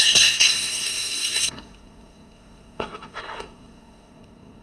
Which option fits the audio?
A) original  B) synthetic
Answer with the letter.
B